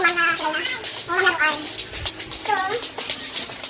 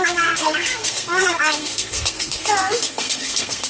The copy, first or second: second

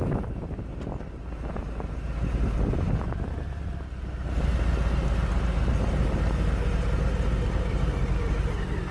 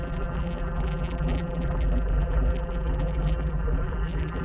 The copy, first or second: second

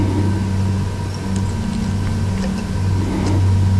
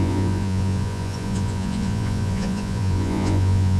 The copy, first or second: second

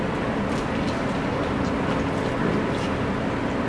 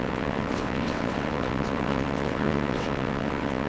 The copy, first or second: second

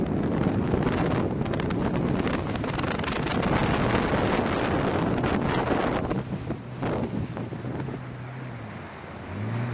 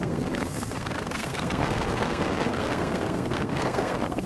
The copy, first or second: second